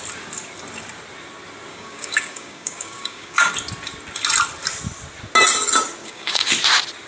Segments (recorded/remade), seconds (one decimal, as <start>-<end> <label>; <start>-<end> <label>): 0.0-1.7 recorded; 1.7-3.5 remade; 3.5-6.0 recorded; 6.0-6.5 remade; 6.5-7.1 recorded